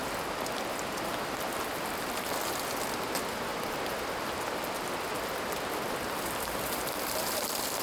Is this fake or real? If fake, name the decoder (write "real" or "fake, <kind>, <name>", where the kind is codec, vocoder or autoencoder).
real